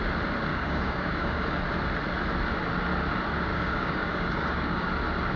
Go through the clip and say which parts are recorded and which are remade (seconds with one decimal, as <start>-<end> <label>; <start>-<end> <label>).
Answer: 0.0-0.5 recorded; 0.5-1.6 remade; 1.6-3.5 recorded; 3.5-4.9 remade; 4.9-5.4 recorded